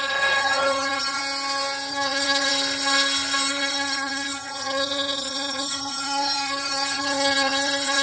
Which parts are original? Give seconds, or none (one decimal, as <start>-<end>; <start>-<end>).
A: 1.2-1.9; 2.5-3.5